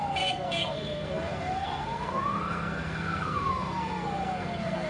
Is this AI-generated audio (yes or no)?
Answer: yes